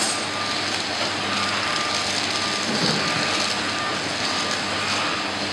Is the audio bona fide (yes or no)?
yes